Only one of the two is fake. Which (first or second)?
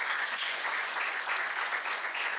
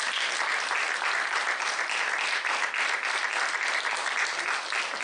first